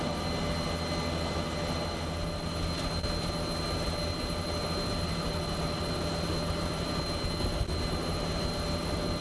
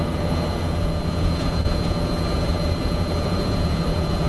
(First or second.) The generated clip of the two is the second